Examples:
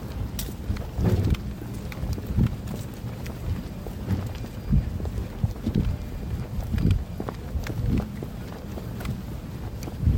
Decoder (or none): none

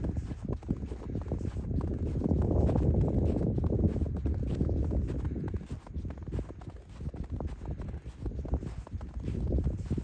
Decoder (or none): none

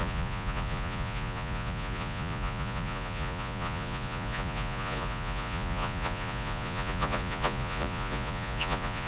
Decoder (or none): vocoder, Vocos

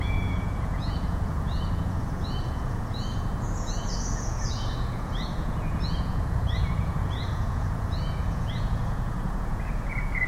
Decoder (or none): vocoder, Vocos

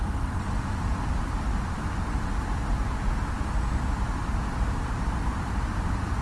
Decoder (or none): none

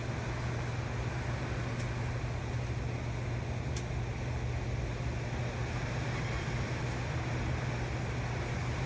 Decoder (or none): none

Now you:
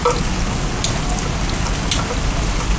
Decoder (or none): none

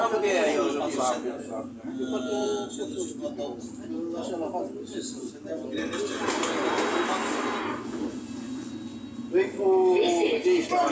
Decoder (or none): none